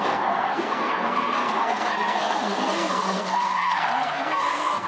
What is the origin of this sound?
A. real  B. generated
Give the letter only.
B